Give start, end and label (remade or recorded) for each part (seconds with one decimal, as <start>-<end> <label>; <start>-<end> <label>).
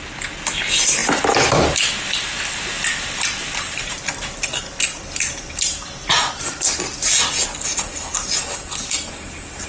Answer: 0.0-9.7 recorded